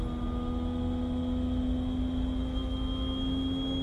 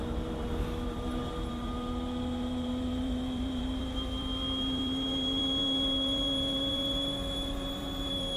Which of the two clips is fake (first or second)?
second